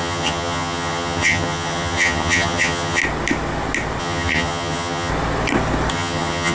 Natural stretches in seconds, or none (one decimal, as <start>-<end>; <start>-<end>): 3.0-4.0; 5.1-5.9